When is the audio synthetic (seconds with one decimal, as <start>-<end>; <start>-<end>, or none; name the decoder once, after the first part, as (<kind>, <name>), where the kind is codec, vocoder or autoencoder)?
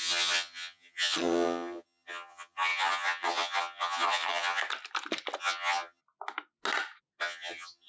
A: 0.0-4.6 (vocoder, HiFi-GAN); 5.4-6.0; 7.2-7.9